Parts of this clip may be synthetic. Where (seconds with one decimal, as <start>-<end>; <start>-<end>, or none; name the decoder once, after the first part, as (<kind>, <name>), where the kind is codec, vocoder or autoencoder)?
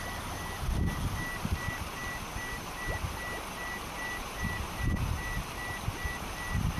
none